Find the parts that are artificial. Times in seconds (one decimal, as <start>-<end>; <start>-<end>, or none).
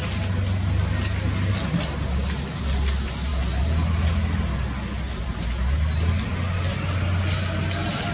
none